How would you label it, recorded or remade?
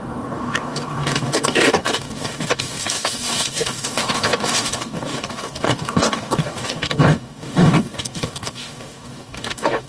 remade